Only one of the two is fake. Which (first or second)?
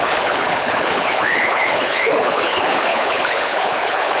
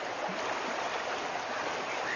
first